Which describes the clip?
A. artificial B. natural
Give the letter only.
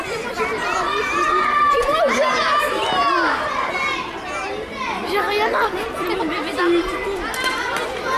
B